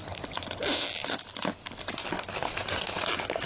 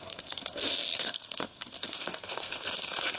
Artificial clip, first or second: second